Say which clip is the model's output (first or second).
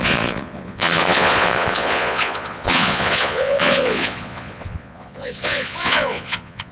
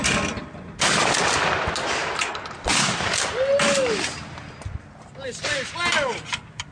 first